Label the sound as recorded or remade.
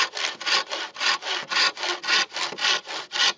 recorded